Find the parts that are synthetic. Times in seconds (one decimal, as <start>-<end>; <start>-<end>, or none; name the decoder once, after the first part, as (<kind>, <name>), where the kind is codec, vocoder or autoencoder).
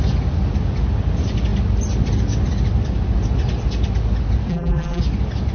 4.5-5.0 (vocoder, BigVGAN v2)